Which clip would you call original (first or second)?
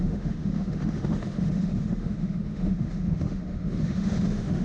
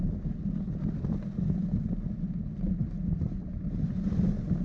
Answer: second